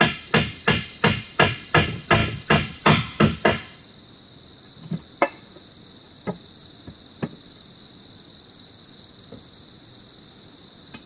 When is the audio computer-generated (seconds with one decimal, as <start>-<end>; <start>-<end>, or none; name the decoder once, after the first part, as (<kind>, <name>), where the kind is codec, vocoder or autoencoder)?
none